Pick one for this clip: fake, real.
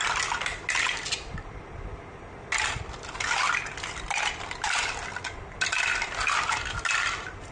real